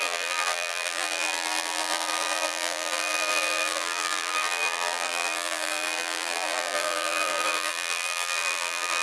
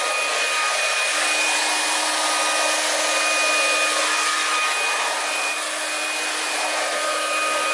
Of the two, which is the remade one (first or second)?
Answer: first